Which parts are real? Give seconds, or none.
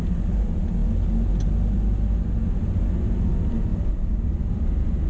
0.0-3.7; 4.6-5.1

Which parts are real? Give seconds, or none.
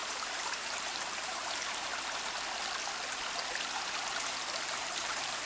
1.9-4.8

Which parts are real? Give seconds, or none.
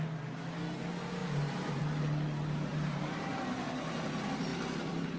0.0-1.2; 1.8-2.7; 3.3-5.2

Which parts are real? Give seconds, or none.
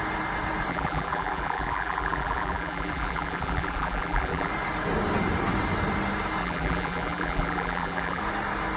0.0-0.7; 4.5-6.4; 8.2-8.8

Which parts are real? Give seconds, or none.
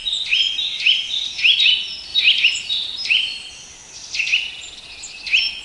1.3-2.1; 4.2-5.6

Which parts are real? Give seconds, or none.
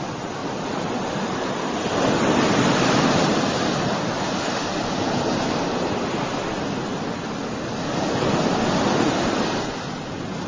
0.0-0.4; 3.4-6.9; 7.6-10.5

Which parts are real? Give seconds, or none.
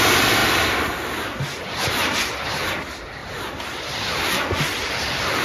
0.0-5.4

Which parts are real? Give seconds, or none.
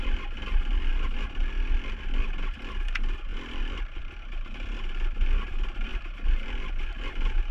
0.0-3.3; 4.0-7.5